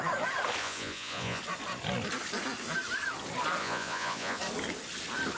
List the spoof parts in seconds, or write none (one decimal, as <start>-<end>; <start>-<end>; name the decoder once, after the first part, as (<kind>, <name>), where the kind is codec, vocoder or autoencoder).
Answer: 0.6-1.4 (vocoder, Vocos); 3.6-4.4